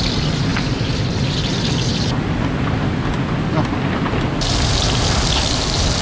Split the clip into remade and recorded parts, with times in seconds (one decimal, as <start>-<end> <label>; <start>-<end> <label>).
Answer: 0.0-6.0 recorded

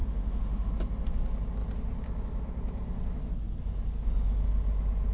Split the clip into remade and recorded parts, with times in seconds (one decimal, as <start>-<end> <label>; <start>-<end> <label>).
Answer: 0.0-0.7 remade; 0.7-5.1 recorded

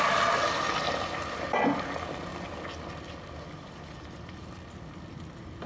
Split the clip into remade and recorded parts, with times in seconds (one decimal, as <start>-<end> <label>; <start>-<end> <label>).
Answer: 0.0-5.7 recorded

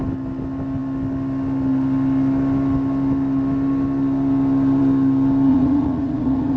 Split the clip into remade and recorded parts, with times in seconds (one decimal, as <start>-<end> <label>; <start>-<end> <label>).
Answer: 0.0-5.5 recorded; 5.5-6.6 remade

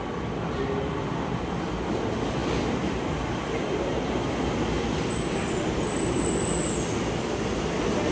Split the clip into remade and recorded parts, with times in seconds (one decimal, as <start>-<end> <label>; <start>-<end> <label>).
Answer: 0.0-8.1 recorded

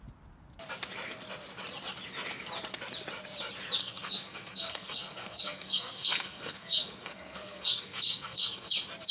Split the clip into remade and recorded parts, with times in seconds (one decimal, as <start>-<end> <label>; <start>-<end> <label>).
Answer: 0.0-3.8 recorded; 3.8-8.7 remade; 8.7-9.1 recorded

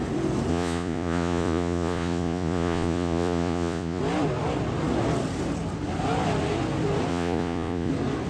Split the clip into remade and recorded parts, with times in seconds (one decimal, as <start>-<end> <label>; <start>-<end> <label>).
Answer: 0.0-0.5 recorded; 0.5-4.0 remade; 4.0-7.1 recorded; 7.1-7.9 remade; 7.9-8.3 recorded

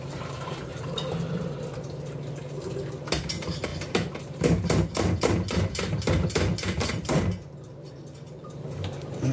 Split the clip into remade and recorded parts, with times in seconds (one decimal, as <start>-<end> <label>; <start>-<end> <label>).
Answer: 0.0-0.7 remade; 0.7-3.1 recorded; 3.1-9.3 remade